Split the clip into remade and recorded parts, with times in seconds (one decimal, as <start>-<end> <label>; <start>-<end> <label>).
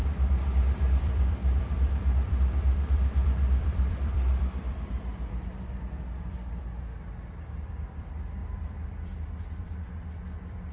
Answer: 0.0-10.7 remade